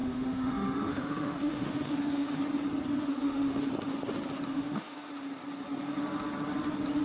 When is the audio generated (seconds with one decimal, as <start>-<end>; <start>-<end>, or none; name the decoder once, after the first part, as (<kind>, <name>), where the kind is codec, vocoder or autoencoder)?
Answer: 0.0-2.4 (autoencoder, DAC-VAE); 2.9-3.7; 4.5-5.1